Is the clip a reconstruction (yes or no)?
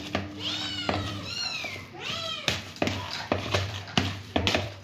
yes